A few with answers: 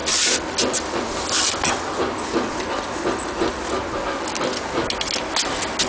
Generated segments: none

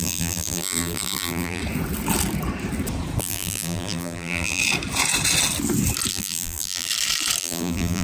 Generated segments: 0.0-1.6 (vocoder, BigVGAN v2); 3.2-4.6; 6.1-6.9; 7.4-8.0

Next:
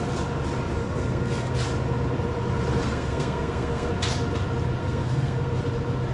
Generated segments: 0.8-1.5 (codec, SNAC); 2.8-3.9; 4.8-5.6

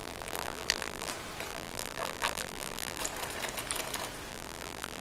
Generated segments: 0.0-1.1 (vocoder, BigVGAN v2); 1.5-3.0; 4.3-5.0